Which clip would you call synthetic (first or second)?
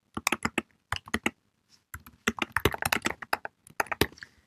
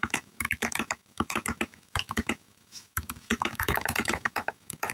second